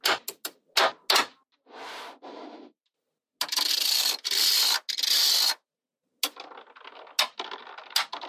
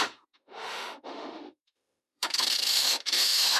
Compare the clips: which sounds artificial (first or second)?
second